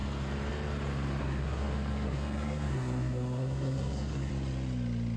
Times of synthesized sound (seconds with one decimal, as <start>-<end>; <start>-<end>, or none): 1.2-4.3